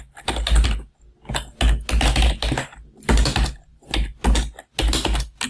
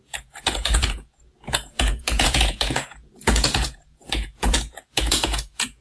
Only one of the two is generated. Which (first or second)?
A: second